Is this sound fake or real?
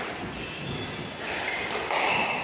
real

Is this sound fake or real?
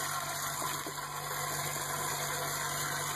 real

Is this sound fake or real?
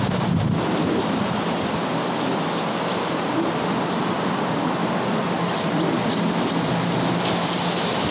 real